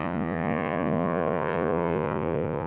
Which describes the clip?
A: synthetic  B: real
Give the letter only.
A